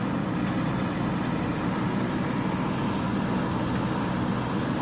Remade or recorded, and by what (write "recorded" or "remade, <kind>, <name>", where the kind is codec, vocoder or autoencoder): recorded